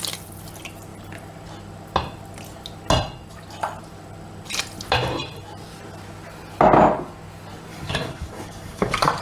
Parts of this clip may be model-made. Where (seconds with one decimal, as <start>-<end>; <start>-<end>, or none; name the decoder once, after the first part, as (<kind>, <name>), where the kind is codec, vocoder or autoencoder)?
7.7-9.2 (codec, DAC)